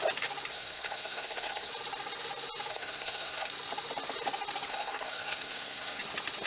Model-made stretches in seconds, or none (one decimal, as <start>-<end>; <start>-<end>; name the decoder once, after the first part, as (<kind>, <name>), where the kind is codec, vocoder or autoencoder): 0.5-1.7 (codec, SNAC); 2.7-3.5; 4.7-6.0